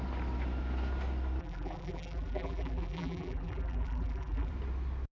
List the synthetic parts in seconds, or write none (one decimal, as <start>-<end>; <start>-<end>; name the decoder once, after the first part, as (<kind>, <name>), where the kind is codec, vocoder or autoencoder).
1.4-4.5 (vocoder, BigVGAN v2)